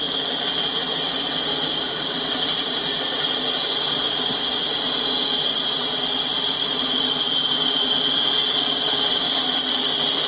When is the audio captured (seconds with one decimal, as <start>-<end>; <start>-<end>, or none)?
0.0-10.3